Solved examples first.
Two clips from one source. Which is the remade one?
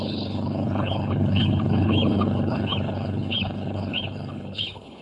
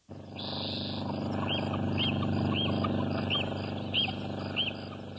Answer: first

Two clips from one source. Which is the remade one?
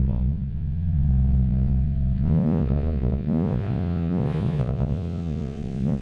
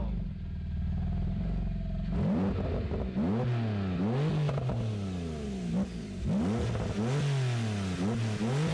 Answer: first